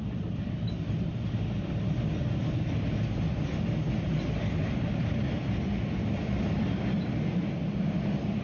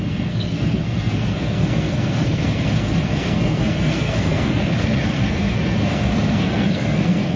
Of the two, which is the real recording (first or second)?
first